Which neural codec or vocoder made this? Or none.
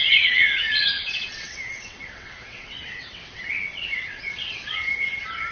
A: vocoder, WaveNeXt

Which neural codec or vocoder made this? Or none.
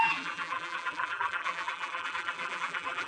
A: vocoder, BigVGAN v2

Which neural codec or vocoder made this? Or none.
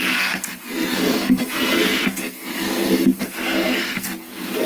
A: codec, SNAC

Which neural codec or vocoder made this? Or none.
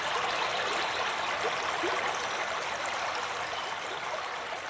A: none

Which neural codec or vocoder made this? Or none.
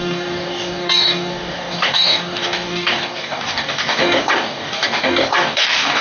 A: codec, DAC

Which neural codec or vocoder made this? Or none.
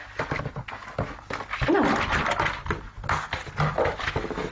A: none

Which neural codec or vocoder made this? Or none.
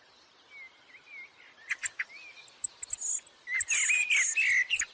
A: none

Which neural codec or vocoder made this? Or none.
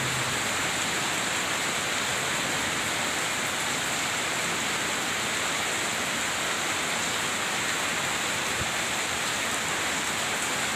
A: none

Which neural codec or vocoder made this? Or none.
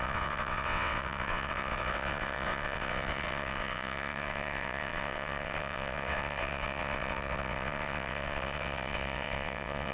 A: vocoder, WaveNeXt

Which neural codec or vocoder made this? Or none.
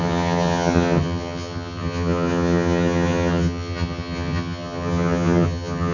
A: vocoder, HiFi-GAN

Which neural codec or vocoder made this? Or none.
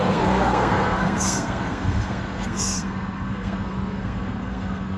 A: codec, SNAC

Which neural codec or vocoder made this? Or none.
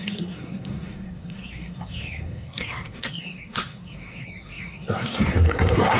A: codec, SNAC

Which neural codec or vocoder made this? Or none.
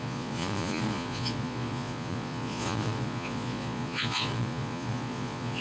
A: vocoder, Vocos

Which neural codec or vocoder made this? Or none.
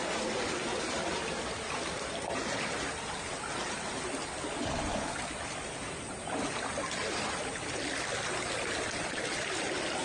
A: none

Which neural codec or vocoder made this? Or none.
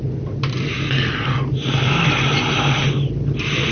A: none